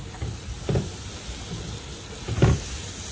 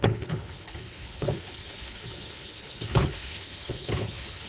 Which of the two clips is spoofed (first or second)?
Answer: second